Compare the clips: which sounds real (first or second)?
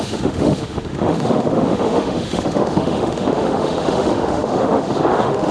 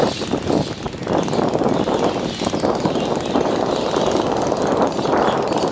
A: second